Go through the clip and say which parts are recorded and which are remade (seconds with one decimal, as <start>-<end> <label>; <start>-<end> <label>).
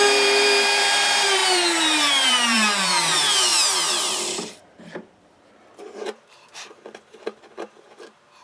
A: 0.0-8.4 remade